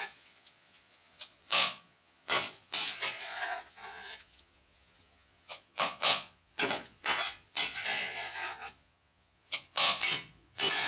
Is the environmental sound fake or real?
fake